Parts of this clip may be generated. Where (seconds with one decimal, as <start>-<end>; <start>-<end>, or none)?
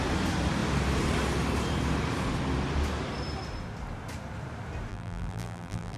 4.9-6.0